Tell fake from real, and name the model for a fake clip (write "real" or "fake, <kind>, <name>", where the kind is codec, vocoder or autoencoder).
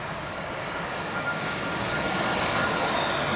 fake, codec, DAC